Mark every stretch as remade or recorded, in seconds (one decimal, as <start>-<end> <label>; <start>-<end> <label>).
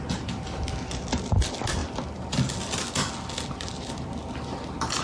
0.0-5.0 recorded